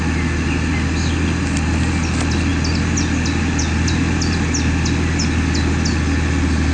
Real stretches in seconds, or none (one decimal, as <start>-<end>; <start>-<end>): 0.0-6.7